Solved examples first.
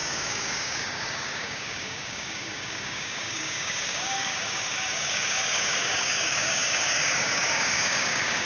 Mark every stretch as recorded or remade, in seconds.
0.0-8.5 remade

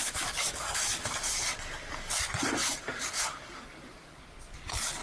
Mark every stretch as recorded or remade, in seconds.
0.0-2.2 remade; 2.2-2.6 recorded; 2.6-4.2 remade; 4.2-5.0 recorded